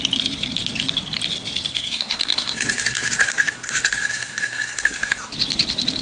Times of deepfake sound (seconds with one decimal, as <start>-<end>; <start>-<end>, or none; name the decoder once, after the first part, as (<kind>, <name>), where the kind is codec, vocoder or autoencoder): 1.7-5.3 (codec, SNAC)